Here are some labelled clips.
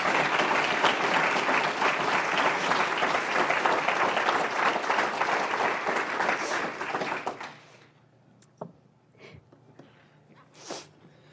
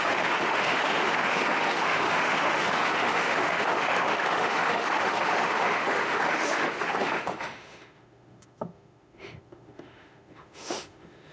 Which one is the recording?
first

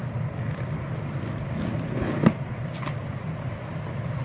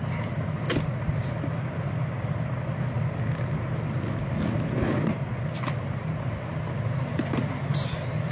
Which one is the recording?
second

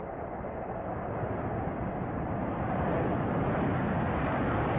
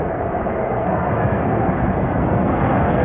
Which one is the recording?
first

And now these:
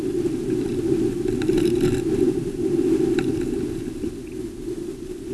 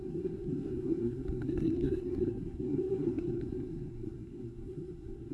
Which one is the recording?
first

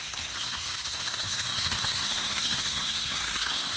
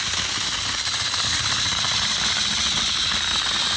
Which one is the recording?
second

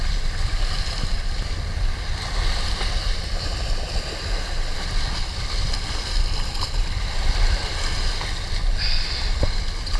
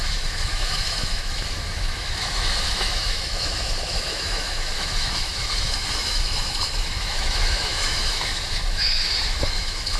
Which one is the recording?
first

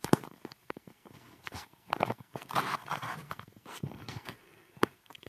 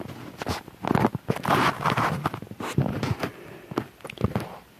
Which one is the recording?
second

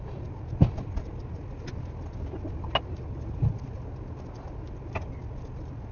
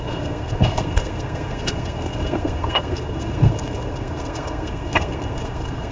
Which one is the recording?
first